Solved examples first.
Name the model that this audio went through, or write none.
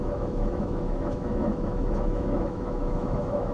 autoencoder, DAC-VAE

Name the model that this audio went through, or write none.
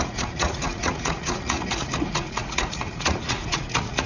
vocoder, Vocos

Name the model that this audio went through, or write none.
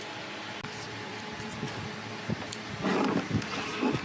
none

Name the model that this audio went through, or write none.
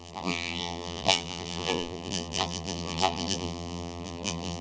vocoder, BigVGAN v2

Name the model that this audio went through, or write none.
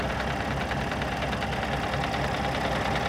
none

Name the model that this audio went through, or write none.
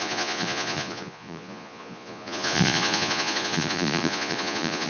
vocoder, Vocos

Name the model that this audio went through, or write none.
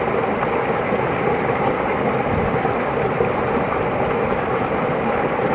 none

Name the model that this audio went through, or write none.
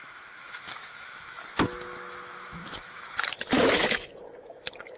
autoencoder, DAC-VAE